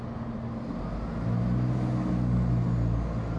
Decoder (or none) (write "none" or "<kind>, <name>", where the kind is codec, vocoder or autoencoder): none